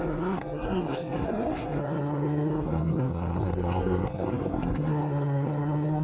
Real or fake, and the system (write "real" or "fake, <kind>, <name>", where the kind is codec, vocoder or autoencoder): fake, codec, SNAC